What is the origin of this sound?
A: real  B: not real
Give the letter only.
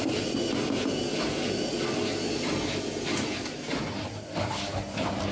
A